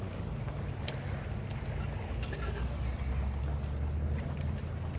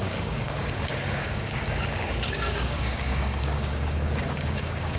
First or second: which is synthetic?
second